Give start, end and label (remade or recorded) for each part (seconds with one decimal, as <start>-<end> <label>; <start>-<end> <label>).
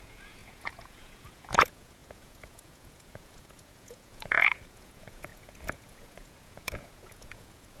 0.0-7.8 remade